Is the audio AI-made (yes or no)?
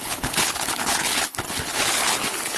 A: yes